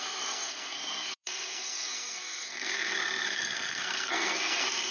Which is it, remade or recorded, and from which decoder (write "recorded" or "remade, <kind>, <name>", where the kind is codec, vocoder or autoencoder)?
remade, codec, SNAC